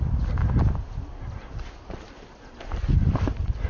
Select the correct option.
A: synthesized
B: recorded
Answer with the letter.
B